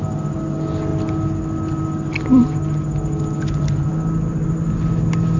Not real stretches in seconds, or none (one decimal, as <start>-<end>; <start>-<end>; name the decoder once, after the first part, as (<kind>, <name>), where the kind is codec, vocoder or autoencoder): none